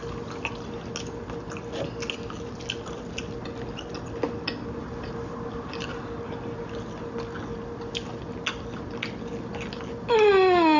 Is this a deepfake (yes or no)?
no